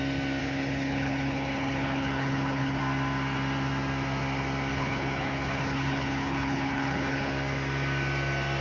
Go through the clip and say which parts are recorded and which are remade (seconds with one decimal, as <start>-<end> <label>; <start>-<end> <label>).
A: 0.0-0.4 recorded; 0.4-2.8 remade; 2.8-4.7 recorded; 4.7-7.3 remade; 7.3-8.6 recorded